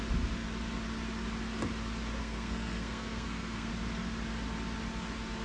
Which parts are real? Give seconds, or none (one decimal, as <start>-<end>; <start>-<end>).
0.0-2.2; 3.7-5.4